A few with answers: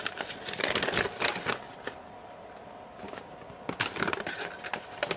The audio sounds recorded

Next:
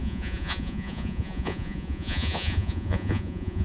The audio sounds remade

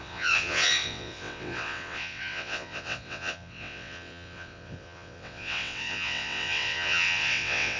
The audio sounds remade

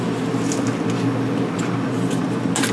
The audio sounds recorded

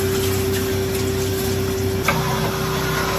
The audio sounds recorded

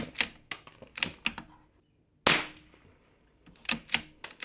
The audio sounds recorded